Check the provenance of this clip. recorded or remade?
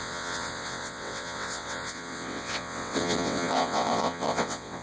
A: remade